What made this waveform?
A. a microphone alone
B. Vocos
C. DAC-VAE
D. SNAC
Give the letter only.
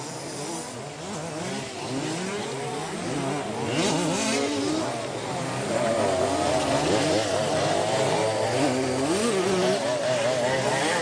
A